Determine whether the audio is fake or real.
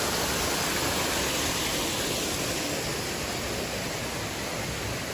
real